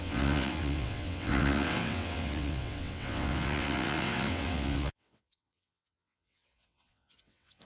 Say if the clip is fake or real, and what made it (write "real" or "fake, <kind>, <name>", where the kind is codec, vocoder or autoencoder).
fake, vocoder, WaveNeXt